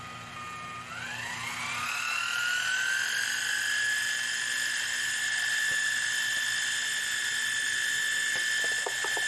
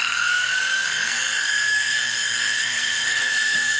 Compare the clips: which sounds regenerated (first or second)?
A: second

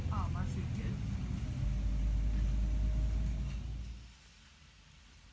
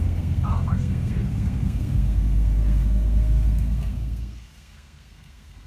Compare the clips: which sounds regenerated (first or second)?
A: second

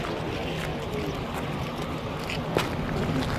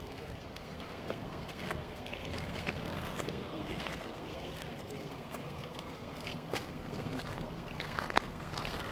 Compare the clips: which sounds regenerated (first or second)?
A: second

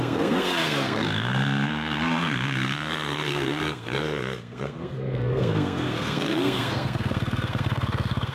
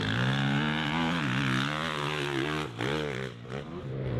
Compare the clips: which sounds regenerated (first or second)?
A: first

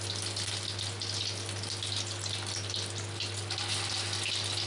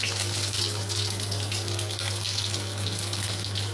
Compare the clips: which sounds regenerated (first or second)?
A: second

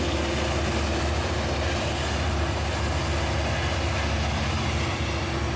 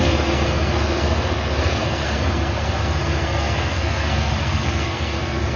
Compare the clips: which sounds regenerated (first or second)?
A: second